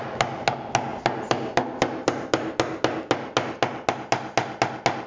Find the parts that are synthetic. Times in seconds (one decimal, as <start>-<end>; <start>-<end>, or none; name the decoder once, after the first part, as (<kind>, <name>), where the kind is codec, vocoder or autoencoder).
none